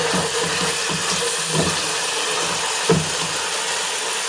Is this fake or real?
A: real